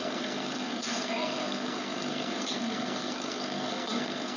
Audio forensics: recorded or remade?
remade